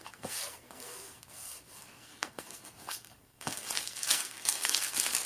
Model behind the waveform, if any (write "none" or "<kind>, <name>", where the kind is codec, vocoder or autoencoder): codec, SNAC